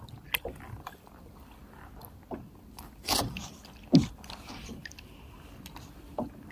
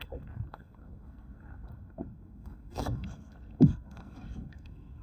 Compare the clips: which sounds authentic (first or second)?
first